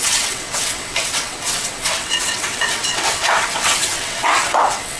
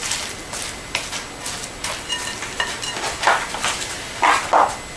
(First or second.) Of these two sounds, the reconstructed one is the first